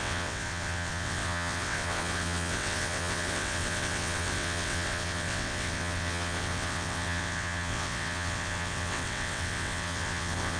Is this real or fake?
fake